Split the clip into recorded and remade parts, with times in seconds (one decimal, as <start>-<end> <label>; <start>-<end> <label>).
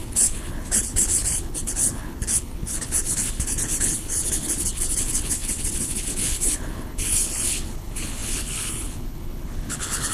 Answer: 0.0-10.1 remade